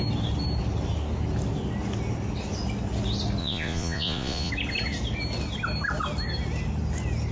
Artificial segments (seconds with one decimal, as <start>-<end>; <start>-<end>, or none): 3.4-4.5

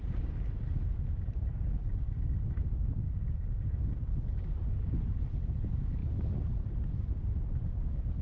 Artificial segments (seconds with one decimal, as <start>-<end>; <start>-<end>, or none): none

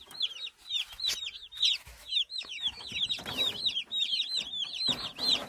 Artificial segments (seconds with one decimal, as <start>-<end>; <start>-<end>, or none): 2.0-2.9

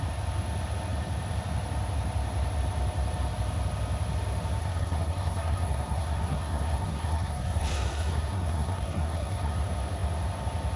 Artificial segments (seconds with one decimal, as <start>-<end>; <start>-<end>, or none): 4.6-9.5

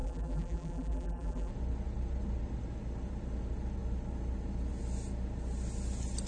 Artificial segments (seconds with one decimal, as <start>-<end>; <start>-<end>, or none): 0.0-1.5

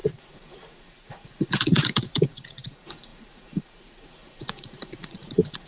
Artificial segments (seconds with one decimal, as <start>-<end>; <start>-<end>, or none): 0.0-5.7

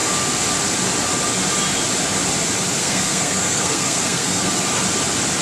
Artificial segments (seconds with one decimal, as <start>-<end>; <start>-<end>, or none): 2.8-4.5